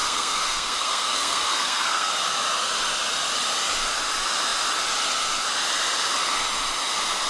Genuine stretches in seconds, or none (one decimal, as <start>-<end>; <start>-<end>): 2.1-7.3